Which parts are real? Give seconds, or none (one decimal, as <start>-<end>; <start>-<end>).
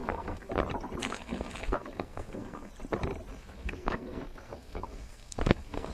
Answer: 0.5-1.0; 2.7-3.3